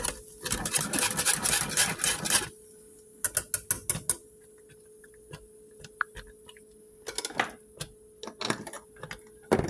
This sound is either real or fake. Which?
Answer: real